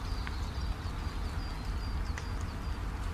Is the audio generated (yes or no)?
no